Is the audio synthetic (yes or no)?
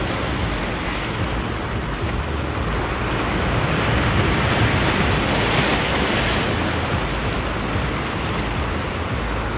no